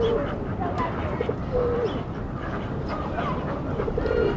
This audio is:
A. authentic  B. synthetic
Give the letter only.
B